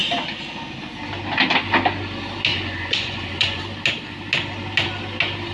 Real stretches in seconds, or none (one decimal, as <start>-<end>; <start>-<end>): 0.0-2.5; 3.6-5.5